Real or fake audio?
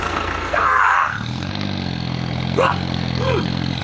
fake